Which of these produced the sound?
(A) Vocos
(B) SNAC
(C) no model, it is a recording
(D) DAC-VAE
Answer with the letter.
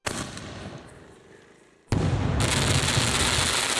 C